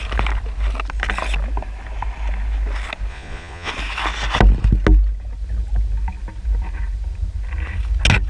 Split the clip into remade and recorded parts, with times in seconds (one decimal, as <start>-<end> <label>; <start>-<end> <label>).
0.0-3.1 recorded; 3.1-3.7 remade; 3.7-8.3 recorded